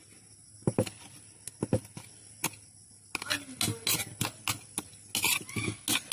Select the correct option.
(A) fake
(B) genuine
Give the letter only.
B